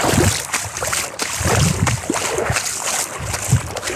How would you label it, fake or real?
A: real